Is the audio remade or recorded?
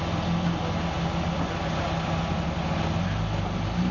recorded